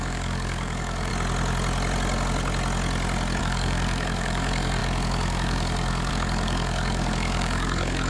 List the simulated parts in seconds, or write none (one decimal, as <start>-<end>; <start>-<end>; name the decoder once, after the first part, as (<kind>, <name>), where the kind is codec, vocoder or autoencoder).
0.0-1.1 (codec, DAC); 3.4-8.1